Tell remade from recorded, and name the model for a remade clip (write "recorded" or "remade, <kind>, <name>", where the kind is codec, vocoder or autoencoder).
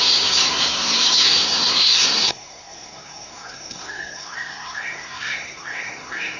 remade, codec, SNAC